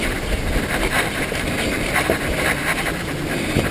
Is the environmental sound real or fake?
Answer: real